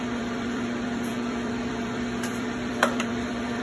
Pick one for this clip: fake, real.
fake